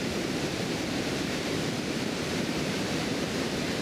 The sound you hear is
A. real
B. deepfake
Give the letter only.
B